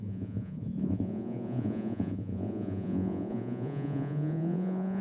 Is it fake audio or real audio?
fake